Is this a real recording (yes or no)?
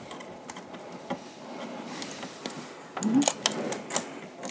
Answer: yes